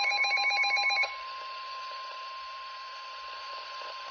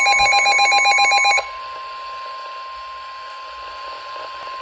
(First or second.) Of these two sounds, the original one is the second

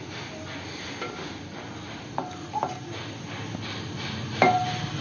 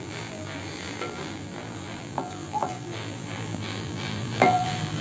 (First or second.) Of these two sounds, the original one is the first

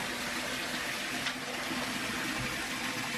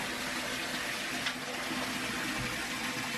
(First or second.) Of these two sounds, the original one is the second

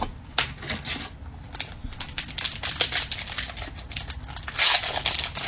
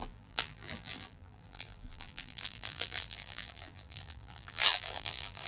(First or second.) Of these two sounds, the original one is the first